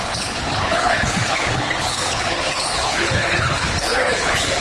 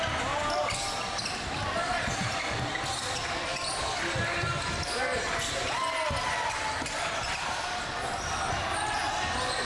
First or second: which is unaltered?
second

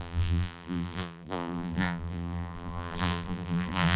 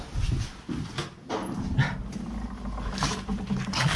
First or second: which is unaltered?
second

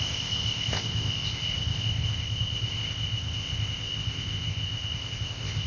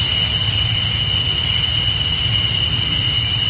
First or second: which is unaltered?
second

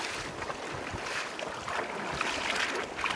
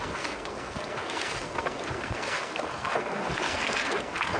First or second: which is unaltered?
first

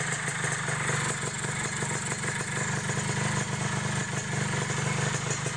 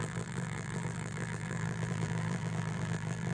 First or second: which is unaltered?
first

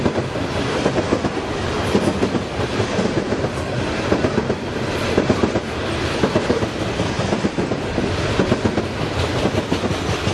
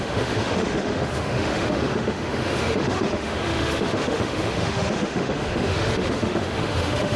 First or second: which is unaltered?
first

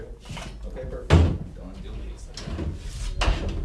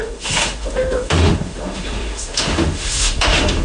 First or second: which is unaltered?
first